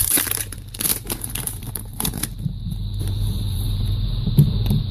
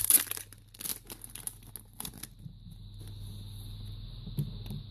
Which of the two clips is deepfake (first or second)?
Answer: first